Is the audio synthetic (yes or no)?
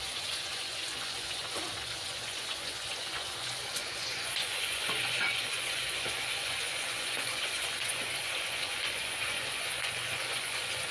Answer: yes